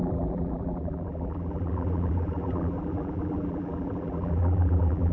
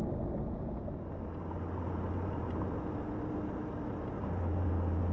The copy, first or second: first